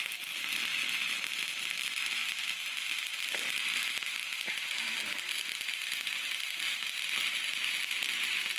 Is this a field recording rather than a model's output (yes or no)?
yes